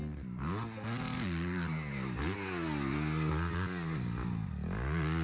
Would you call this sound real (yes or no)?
yes